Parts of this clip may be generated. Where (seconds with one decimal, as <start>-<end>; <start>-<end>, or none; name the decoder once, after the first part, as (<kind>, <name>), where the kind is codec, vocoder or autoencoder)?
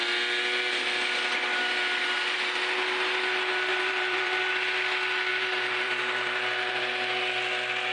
3.7-4.4 (vocoder, BigVGAN v2); 5.3-6.8